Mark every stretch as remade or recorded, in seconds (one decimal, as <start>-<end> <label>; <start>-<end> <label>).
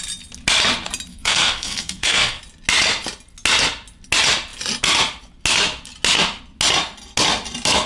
0.0-1.1 recorded; 1.1-2.4 remade; 2.4-7.9 recorded